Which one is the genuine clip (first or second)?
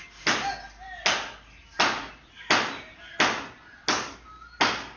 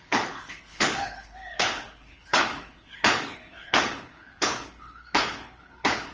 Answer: first